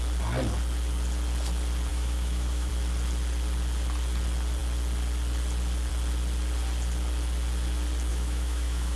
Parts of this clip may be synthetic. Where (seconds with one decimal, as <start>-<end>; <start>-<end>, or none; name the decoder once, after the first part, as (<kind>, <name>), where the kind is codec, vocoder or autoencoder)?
1.9-2.7 (autoencoder, DAC-VAE); 8.1-9.0